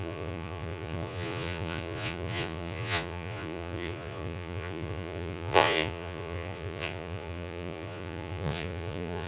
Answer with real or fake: fake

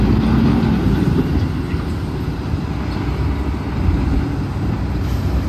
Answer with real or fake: real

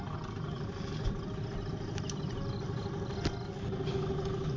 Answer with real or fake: real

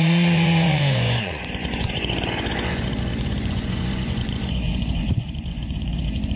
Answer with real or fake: fake